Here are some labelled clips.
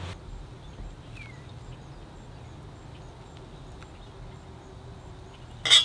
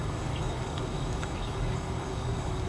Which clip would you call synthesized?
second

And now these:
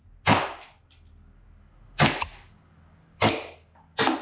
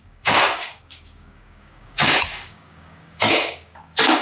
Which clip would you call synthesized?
second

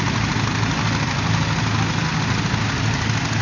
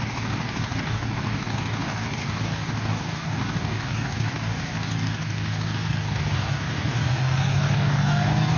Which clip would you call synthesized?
second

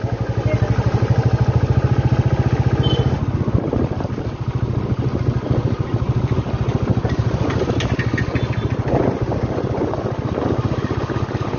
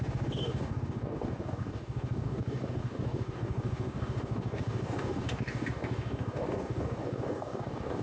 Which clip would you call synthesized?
second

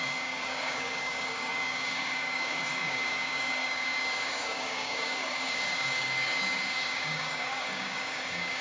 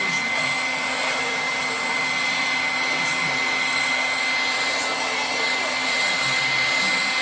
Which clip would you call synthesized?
first